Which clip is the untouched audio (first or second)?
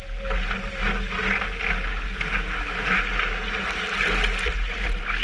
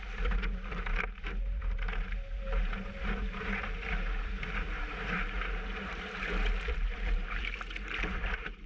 first